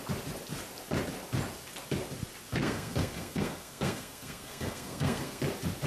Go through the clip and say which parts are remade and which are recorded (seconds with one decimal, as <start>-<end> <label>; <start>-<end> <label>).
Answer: 0.0-2.5 recorded; 2.5-5.4 remade; 5.4-5.9 recorded